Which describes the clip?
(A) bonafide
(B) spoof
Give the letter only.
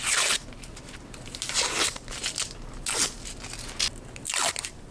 A